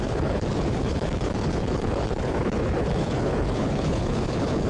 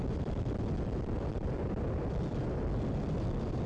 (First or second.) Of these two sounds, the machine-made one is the first